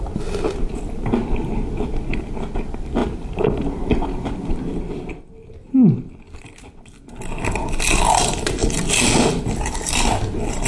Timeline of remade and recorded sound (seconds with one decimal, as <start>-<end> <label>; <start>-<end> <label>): 0.0-8.6 recorded; 8.6-9.4 remade; 9.4-10.7 recorded